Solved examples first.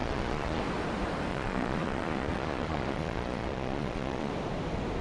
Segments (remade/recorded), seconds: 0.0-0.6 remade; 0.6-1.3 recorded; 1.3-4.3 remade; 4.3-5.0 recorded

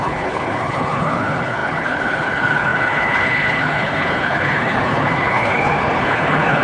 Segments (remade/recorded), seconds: 0.0-6.6 remade